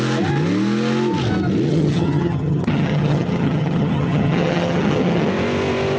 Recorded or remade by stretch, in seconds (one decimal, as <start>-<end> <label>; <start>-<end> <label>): 0.0-1.7 recorded; 1.7-5.3 remade; 5.3-6.0 recorded